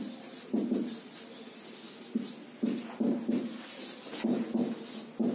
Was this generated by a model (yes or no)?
no